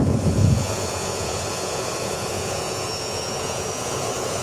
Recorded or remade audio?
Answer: remade